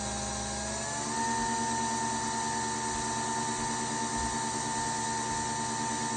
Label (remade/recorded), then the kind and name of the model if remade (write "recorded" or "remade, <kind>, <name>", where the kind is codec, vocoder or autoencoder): recorded